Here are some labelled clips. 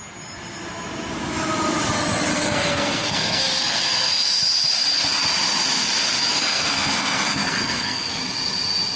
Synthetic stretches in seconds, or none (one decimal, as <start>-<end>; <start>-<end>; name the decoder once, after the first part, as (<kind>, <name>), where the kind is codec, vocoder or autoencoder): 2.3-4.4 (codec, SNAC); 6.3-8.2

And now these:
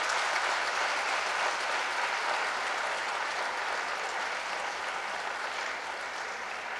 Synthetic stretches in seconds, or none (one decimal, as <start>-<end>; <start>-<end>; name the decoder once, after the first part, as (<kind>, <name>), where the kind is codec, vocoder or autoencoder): none

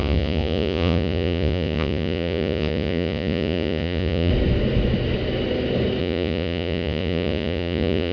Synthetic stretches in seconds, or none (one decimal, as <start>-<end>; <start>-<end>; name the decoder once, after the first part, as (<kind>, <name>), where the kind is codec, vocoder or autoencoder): 0.0-4.3 (vocoder, Vocos); 6.0-8.1

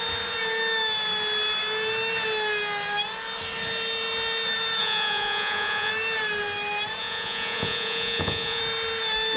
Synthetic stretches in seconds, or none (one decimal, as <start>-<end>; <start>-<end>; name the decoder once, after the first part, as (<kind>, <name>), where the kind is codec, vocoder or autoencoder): 4.8-5.9 (vocoder, Vocos); 7.0-8.6

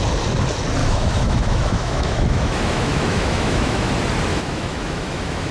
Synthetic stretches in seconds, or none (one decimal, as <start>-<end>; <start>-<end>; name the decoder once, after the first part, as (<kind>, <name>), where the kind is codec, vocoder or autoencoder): 0.8-3.9 (autoencoder, DAC-VAE); 4.3-5.5

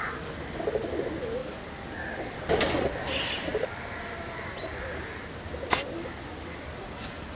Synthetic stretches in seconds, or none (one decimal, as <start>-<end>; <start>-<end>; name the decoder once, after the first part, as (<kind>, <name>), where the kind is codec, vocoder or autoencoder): 1.4-2.0 (vocoder, BigVGAN v2)

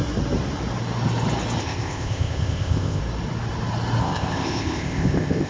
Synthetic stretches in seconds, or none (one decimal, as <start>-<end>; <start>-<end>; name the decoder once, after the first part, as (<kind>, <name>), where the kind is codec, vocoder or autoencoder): 1.6-3.0 (codec, ZipCodec); 4.0-5.5

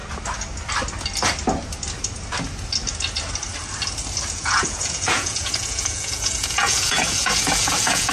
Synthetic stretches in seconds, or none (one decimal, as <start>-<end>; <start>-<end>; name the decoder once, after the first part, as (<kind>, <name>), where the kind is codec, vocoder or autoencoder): 4.3-8.1 (vocoder, Vocos)